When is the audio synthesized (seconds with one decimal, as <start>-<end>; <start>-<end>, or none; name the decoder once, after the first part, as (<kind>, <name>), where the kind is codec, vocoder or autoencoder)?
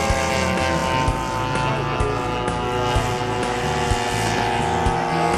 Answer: none